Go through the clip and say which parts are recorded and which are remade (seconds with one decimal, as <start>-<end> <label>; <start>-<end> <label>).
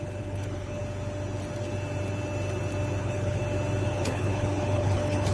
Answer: 0.0-0.8 remade; 0.8-3.0 recorded; 3.0-3.4 remade; 3.4-3.9 recorded; 3.9-5.3 remade